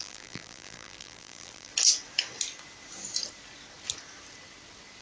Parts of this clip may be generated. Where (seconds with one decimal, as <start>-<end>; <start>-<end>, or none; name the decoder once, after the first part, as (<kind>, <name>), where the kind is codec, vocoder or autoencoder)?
0.0-1.7 (vocoder, BigVGAN v2)